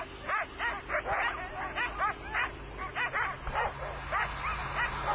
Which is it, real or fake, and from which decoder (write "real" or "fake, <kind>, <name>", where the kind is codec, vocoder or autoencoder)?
real